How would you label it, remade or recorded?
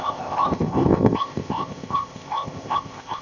remade